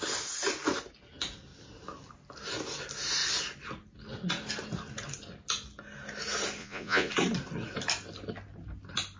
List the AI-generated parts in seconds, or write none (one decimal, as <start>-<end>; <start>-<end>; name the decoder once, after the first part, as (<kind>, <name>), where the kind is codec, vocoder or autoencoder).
6.6-7.1 (vocoder, Vocos)

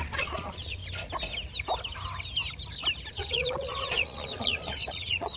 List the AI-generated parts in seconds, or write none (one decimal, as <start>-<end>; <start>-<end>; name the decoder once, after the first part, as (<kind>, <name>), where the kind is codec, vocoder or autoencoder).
0.0-0.8 (vocoder, Vocos); 3.1-5.4